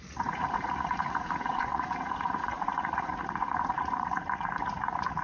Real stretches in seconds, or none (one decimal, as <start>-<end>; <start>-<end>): none